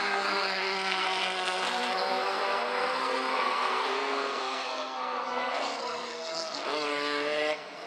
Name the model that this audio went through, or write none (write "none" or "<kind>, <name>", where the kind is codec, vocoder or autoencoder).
codec, SNAC